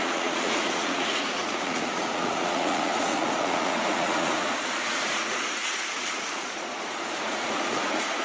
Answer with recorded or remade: remade